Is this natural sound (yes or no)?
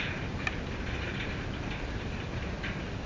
yes